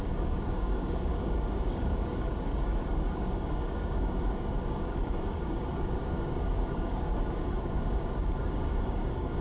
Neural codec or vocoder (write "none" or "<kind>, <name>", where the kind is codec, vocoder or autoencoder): codec, DAC